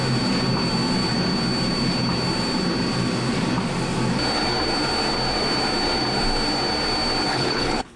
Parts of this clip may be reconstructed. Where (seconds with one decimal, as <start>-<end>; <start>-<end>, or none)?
7.3-8.0